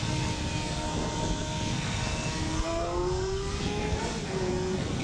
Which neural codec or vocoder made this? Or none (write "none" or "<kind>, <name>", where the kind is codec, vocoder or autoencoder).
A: codec, SNAC